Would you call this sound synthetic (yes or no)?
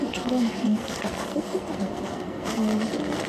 yes